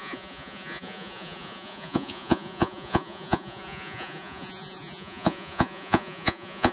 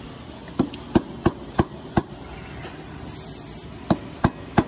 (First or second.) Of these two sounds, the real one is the second